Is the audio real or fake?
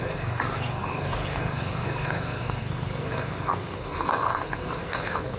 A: fake